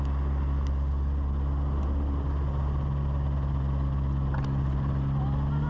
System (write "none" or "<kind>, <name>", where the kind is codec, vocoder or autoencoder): none